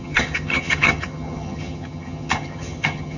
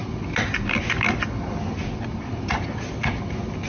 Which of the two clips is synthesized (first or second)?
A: first